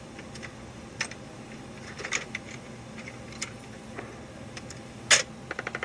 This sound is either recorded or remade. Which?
recorded